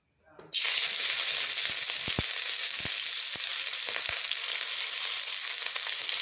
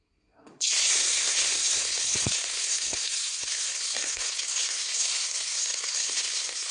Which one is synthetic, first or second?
second